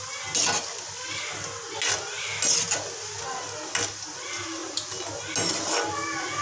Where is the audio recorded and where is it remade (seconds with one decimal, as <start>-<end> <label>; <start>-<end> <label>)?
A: 0.0-6.4 recorded